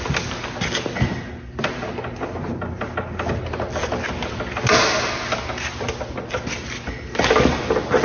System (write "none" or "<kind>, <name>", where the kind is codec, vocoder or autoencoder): none